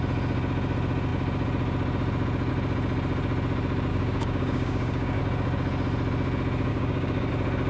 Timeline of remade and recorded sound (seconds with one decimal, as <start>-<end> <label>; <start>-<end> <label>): 0.0-3.9 recorded; 3.9-5.2 remade; 5.2-6.7 recorded; 6.7-7.3 remade; 7.3-7.7 recorded